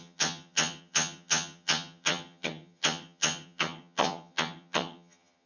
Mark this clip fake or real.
fake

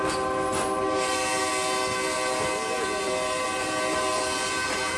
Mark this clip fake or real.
real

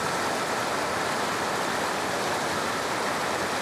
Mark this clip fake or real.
real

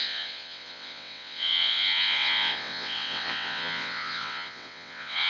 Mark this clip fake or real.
fake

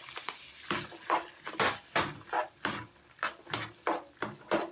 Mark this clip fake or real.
real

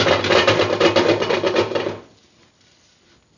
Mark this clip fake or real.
real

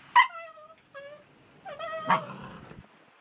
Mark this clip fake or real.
real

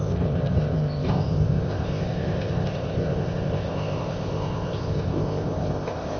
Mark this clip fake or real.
fake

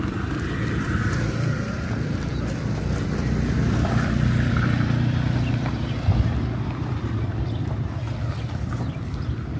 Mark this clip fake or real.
fake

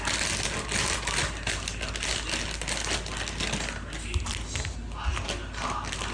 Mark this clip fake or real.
real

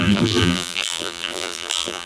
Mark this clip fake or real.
fake